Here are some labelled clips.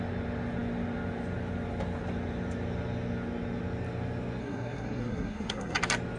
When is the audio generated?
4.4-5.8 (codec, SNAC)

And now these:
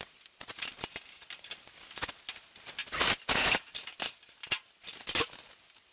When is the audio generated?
none

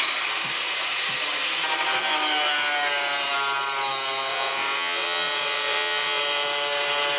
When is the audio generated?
4.3-6.2 (vocoder, WaveNeXt)